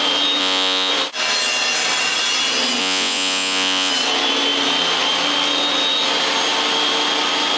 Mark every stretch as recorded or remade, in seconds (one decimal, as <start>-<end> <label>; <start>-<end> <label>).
0.0-0.4 recorded; 0.4-0.9 remade; 0.9-2.8 recorded; 2.8-3.9 remade; 3.9-7.6 recorded